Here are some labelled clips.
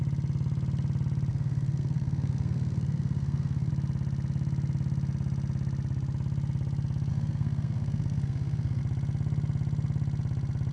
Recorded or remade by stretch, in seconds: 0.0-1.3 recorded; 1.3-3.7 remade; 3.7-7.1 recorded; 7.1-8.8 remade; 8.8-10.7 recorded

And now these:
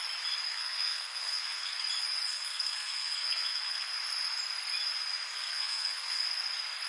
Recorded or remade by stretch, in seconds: 0.0-0.5 recorded; 0.5-1.8 remade; 1.8-2.3 recorded; 2.3-3.9 remade; 3.9-5.3 recorded; 5.3-6.2 remade; 6.2-6.9 recorded

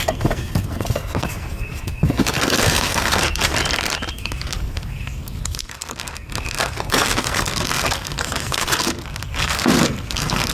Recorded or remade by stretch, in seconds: 0.0-3.5 remade; 3.5-4.1 recorded; 4.1-10.5 remade

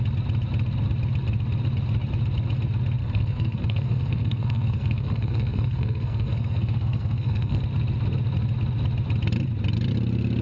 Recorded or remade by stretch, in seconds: 0.0-3.0 recorded; 3.0-7.6 remade; 7.6-10.4 recorded

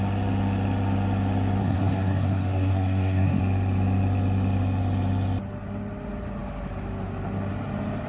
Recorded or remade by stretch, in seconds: 0.0-1.6 recorded; 1.6-3.4 remade; 3.4-8.1 recorded

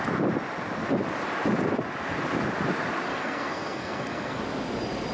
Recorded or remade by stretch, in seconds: 0.0-3.1 recorded; 3.1-4.4 remade; 4.4-5.1 recorded

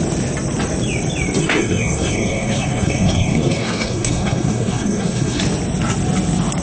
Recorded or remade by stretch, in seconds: 0.0-1.4 recorded; 1.4-5.4 remade; 5.4-6.6 recorded